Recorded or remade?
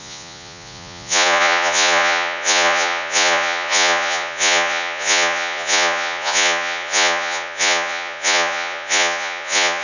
remade